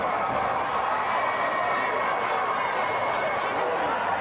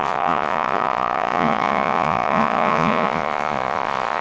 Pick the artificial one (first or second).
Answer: second